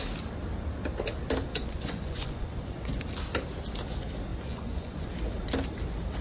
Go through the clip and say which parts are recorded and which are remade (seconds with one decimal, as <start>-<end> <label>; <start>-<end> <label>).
0.0-1.5 recorded; 1.5-2.9 remade; 2.9-4.3 recorded; 4.3-5.1 remade; 5.1-6.2 recorded